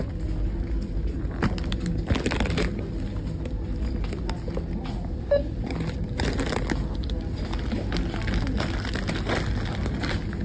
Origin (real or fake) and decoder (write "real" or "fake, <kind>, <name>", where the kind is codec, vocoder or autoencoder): real